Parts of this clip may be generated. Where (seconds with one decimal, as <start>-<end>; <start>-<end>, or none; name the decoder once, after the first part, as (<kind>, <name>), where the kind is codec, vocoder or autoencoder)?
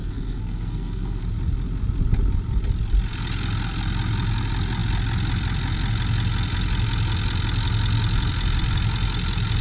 0.0-1.2 (codec, SNAC)